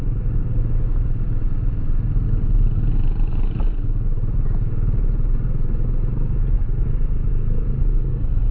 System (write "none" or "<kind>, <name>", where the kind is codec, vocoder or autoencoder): none